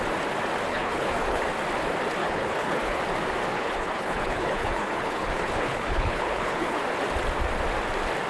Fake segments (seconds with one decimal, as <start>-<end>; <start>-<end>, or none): 0.7-1.4; 2.2-3.0; 3.5-6.8